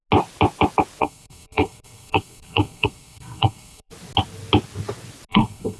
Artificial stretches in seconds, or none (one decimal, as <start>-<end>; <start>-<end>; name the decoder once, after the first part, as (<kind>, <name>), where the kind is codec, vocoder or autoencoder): 1.0-3.9 (codec, SNAC); 5.3-5.8